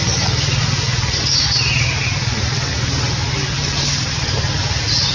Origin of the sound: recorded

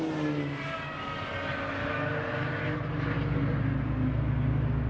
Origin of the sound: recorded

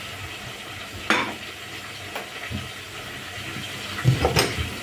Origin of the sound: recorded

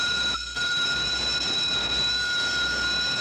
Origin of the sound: recorded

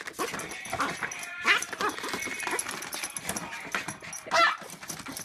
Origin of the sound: recorded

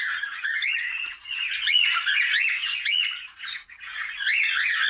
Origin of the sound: remade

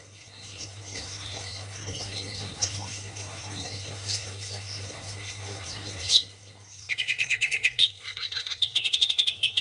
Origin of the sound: remade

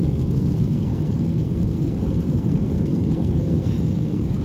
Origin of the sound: remade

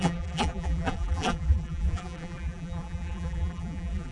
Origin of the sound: remade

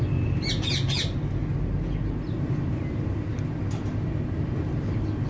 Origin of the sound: recorded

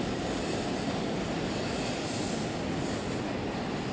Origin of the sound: recorded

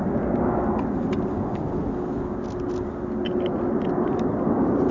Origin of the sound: recorded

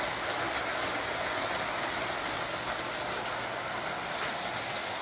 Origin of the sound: recorded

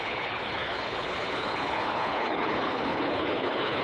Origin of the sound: remade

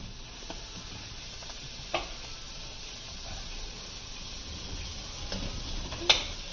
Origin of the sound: recorded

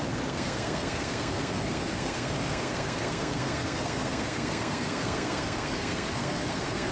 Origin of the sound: remade